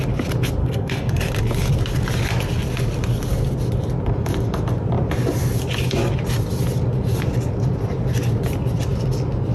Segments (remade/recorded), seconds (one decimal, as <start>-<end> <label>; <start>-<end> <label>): 0.0-0.6 recorded; 0.6-1.2 remade; 1.2-9.5 recorded